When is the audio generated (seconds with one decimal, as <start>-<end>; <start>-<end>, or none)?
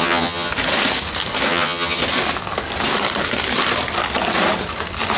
0.0-0.5; 1.5-2.0